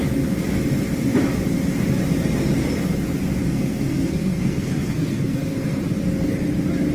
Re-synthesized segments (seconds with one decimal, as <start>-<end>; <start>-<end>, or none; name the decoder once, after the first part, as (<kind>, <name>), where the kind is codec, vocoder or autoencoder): 3.4-5.8 (codec, SNAC)